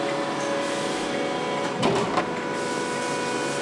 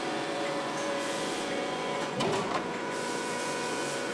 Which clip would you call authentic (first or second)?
first